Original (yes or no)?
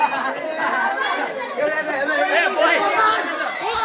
yes